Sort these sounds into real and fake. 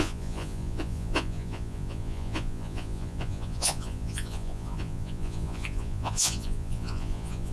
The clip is fake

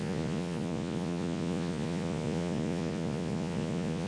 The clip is fake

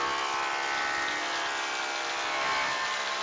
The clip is real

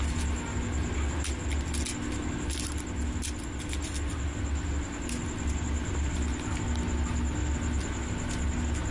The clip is real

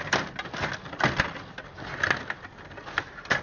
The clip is real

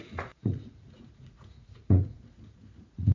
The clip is fake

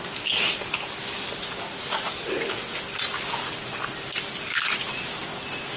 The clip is real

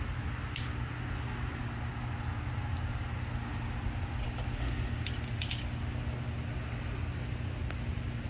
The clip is real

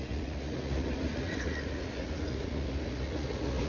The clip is fake